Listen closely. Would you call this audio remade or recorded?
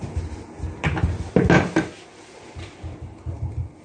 recorded